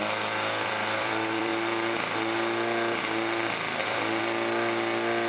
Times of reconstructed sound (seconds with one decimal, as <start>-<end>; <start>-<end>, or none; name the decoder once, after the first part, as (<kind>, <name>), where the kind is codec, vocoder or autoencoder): 0.0-4.2 (vocoder, BigVGAN v2)